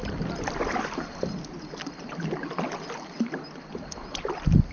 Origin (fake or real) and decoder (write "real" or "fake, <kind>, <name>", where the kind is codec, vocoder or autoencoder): real